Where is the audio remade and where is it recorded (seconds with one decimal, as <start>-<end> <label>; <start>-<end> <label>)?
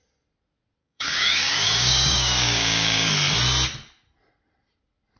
0.0-0.8 recorded; 0.8-3.1 remade; 3.1-5.2 recorded